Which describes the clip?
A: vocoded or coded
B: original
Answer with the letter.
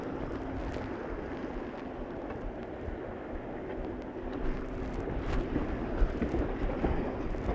B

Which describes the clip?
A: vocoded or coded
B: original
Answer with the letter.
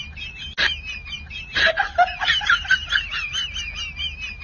B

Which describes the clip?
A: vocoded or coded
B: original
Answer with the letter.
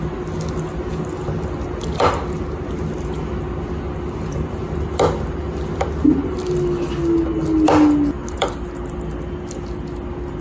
B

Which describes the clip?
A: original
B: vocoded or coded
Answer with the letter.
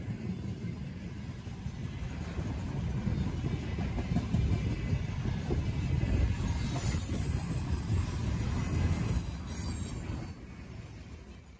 A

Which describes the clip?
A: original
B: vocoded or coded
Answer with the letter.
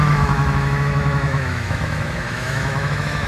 B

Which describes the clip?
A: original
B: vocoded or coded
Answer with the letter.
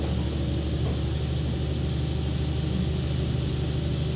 A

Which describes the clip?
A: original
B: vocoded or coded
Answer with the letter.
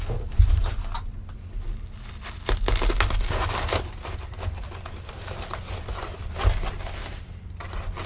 A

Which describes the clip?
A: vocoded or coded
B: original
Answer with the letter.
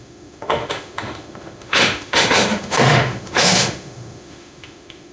A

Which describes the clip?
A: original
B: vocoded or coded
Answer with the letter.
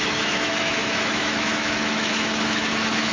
B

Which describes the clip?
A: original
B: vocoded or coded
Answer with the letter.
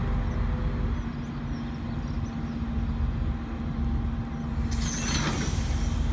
A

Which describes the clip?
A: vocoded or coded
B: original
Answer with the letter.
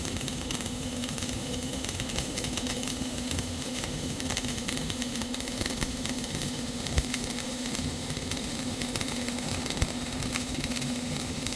A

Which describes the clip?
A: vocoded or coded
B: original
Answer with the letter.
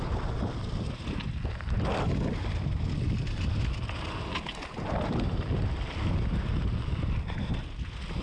B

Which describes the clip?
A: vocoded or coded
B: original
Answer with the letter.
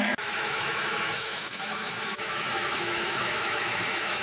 A